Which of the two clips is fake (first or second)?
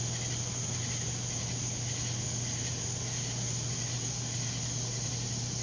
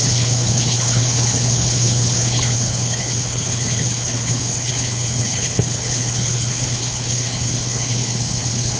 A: second